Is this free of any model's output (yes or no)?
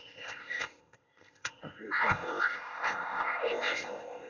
no